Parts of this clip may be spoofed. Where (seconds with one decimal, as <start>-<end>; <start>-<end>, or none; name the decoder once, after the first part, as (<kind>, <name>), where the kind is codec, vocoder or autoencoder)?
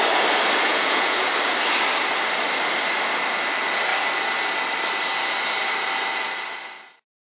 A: 0.7-1.3 (vocoder, Vocos)